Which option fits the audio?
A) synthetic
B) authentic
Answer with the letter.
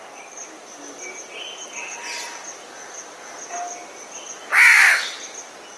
B